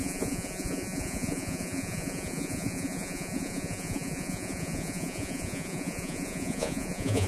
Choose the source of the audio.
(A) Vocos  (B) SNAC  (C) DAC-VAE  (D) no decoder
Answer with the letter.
A